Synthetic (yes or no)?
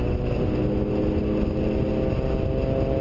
no